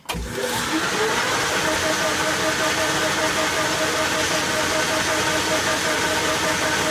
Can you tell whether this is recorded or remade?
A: recorded